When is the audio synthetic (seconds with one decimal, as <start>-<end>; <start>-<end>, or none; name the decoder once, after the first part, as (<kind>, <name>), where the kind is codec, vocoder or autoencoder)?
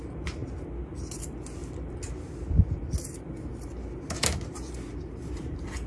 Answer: none